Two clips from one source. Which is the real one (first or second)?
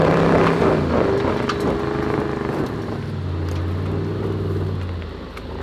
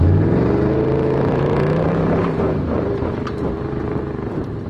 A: first